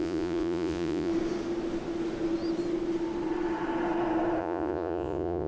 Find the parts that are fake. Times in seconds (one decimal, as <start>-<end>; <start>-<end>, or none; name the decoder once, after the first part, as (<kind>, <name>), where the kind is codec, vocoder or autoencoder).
0.0-1.1 (vocoder, Vocos); 4.4-5.5